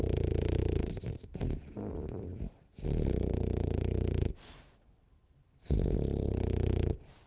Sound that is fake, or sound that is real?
real